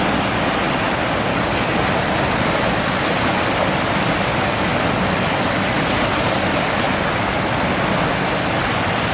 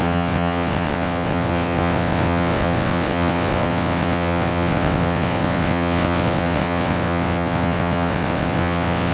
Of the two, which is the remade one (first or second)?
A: second